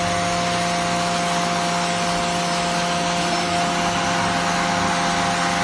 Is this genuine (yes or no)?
yes